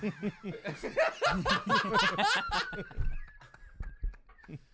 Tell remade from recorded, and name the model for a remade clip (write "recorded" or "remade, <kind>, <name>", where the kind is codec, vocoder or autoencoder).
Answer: recorded